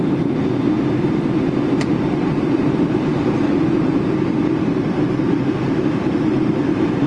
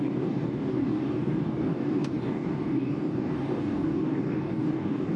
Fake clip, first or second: second